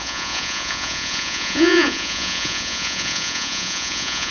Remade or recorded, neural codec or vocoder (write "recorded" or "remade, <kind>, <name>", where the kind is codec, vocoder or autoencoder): remade, vocoder, Vocos